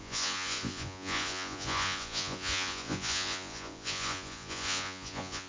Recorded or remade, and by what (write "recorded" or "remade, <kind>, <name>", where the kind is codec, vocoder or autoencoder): remade, vocoder, Vocos